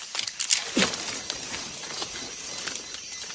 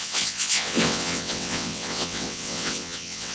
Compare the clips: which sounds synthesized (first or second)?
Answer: second